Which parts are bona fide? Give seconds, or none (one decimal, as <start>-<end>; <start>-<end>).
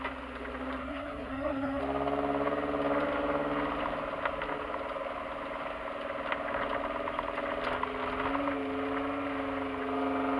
0.0-0.8; 1.8-10.4